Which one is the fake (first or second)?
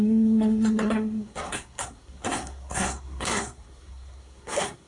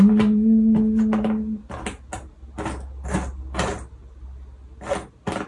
first